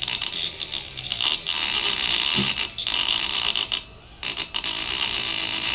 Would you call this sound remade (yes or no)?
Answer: no